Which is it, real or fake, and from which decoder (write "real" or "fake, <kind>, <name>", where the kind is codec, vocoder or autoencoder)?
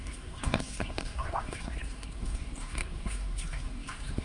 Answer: fake, codec, SNAC